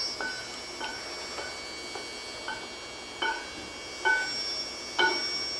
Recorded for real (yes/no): yes